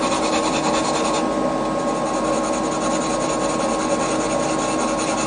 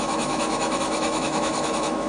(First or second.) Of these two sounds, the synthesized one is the second